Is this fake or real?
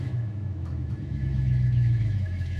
fake